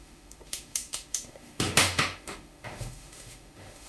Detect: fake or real fake